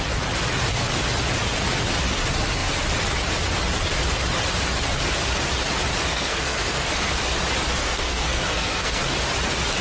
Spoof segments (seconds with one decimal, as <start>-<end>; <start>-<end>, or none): 6.1-7.2; 7.8-9.0